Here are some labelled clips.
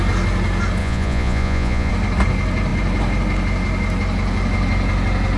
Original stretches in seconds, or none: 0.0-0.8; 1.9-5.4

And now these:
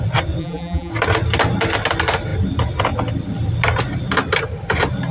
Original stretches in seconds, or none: 0.0-0.4; 0.9-5.1

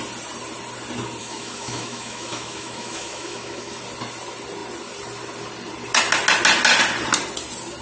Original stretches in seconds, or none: 0.0-1.2; 3.8-7.8

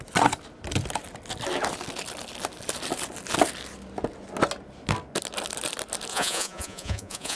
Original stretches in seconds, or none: 0.0-6.1

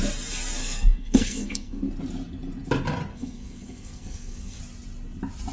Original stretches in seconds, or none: 0.0-0.6; 1.9-3.1; 4.6-5.5

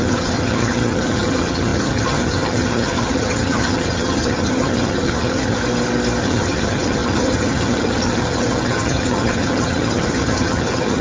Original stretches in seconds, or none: 5.6-6.2